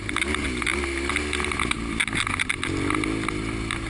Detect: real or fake real